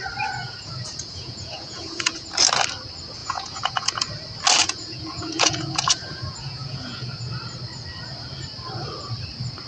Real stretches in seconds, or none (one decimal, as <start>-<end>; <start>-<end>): 0.0-0.4; 2.3-3.2; 4.1-4.6; 7.3-9.7